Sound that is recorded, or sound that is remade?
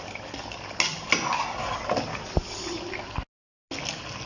recorded